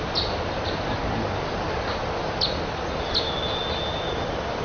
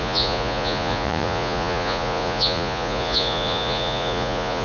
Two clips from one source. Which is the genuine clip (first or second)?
first